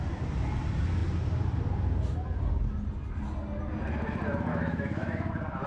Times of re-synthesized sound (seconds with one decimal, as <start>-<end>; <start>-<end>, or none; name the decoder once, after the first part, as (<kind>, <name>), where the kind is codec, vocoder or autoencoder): 4.5-5.3 (autoencoder, DAC-VAE)